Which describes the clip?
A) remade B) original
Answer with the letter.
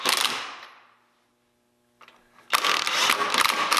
B